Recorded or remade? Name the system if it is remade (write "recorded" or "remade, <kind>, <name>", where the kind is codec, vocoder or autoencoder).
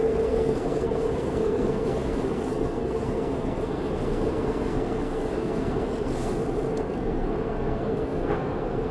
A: remade, codec, SNAC